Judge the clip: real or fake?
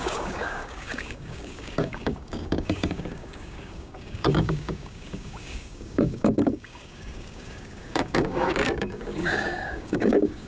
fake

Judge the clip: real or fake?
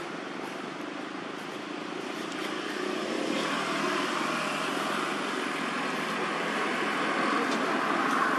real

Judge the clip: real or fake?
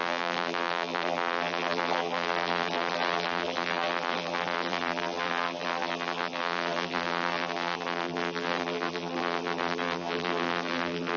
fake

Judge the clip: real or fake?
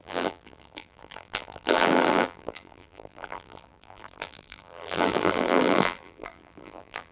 fake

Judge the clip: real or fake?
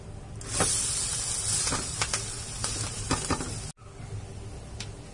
real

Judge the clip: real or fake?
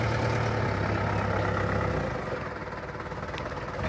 real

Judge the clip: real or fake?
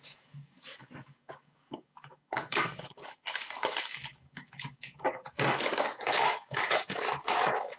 fake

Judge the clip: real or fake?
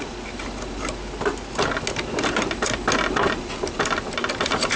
real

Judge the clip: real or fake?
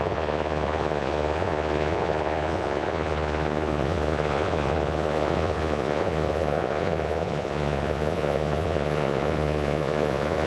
fake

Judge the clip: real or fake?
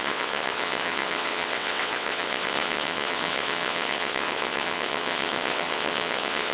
fake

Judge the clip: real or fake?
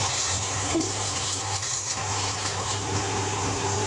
fake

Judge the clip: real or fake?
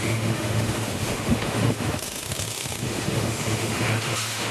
fake